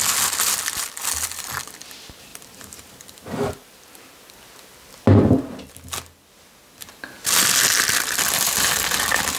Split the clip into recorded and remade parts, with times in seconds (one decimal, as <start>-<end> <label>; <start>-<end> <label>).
0.0-2.3 recorded; 2.3-3.5 remade; 3.5-9.4 recorded